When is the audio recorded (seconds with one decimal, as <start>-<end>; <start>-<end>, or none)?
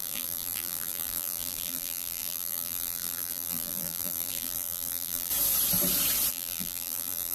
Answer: 5.3-6.3